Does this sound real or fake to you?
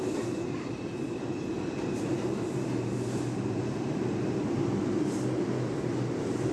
real